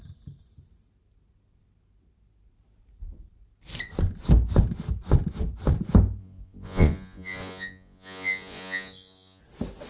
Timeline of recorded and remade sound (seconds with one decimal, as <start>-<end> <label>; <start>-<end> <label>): 0.0-6.2 recorded; 6.2-9.4 remade; 9.4-9.9 recorded